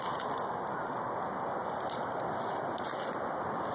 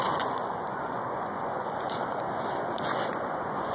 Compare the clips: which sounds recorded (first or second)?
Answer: first